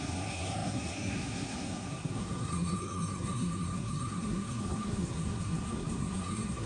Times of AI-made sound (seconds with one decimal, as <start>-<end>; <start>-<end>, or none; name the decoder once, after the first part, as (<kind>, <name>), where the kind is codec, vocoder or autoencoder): 0.0-6.7 (codec, SNAC)